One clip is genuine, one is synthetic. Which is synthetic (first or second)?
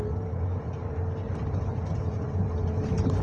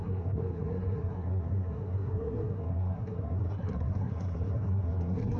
second